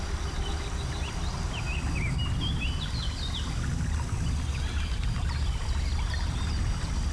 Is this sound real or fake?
real